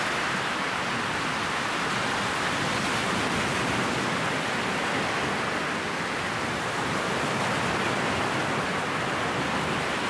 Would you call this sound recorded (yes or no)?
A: yes